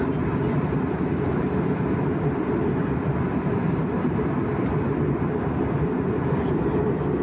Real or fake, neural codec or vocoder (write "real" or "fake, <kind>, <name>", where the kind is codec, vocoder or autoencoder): real